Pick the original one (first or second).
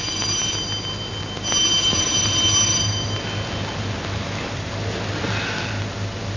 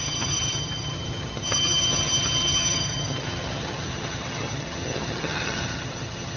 first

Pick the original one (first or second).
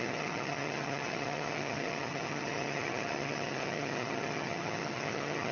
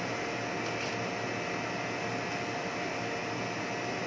second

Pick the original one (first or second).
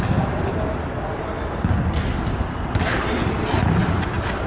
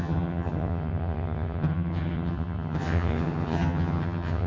first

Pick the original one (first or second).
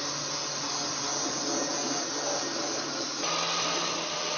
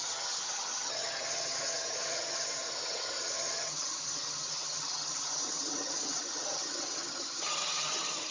first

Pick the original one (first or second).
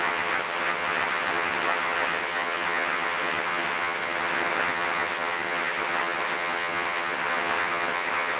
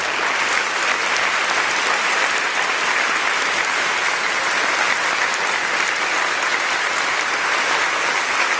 second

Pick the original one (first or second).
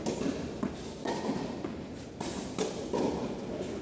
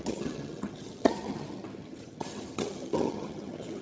first